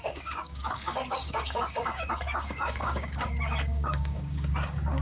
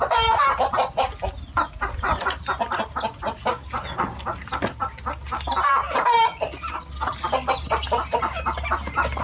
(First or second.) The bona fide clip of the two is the second